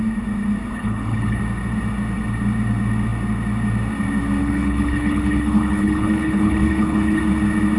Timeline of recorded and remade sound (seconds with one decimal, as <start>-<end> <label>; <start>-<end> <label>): 0.0-0.7 recorded; 0.7-1.4 remade; 1.4-4.4 recorded; 4.4-7.2 remade; 7.2-7.8 recorded

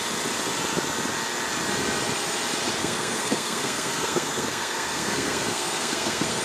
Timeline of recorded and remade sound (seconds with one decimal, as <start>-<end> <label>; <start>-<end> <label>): 0.0-2.8 recorded; 2.8-6.4 remade

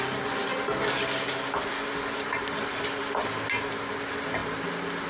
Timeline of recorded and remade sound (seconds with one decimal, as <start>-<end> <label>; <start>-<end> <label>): 0.0-5.1 recorded

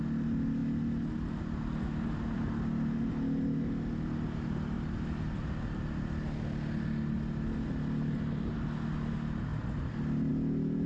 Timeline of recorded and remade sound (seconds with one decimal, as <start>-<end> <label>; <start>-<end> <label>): 0.0-10.9 recorded

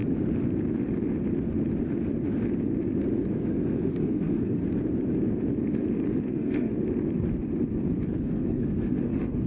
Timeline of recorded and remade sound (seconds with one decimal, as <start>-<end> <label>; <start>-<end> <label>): 0.0-3.3 recorded; 3.3-4.6 remade; 4.6-6.3 recorded; 6.3-6.7 remade; 6.7-8.2 recorded; 8.2-9.5 remade